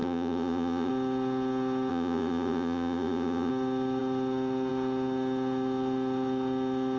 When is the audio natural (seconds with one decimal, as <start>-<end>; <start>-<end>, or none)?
0.9-1.9; 3.5-7.0